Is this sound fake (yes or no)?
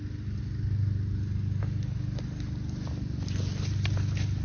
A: no